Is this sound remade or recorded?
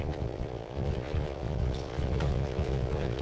remade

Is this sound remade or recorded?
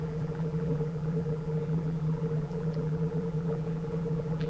remade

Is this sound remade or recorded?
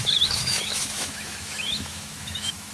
remade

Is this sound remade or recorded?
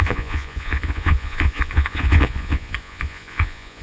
remade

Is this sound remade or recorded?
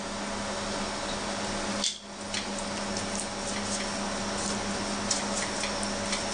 recorded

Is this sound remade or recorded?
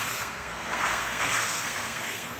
remade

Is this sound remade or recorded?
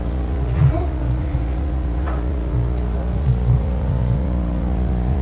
remade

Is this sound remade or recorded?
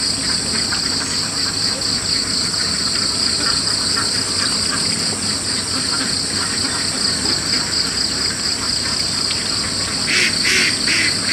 recorded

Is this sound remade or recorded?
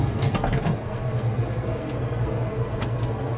remade